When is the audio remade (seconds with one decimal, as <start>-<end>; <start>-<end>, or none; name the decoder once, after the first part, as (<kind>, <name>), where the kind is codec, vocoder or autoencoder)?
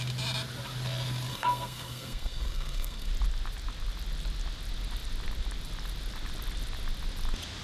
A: 1.3-3.1 (codec, SNAC)